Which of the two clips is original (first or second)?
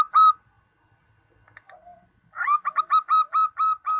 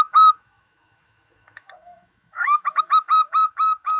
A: first